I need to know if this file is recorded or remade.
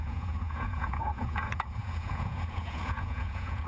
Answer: remade